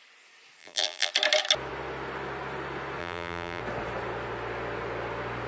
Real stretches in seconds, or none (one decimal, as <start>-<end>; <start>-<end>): 0.0-0.6; 1.1-3.0; 3.6-5.5